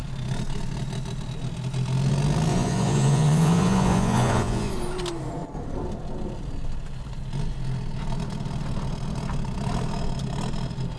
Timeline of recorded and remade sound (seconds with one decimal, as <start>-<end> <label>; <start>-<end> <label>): 0.0-2.5 recorded; 2.5-4.7 remade; 4.7-11.0 recorded